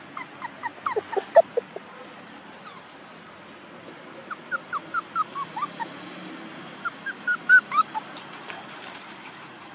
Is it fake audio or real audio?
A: real